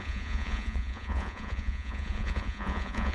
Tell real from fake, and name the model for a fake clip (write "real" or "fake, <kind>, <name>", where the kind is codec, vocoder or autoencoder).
fake, vocoder, Vocos